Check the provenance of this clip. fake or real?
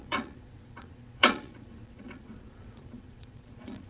fake